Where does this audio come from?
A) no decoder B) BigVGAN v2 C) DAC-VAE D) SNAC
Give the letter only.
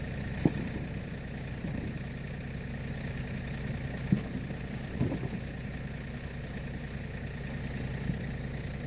A